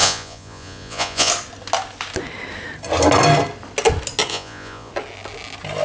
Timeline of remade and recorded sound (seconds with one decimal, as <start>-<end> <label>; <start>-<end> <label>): 0.0-1.3 remade; 1.3-4.3 recorded; 4.3-4.9 remade; 4.9-5.8 recorded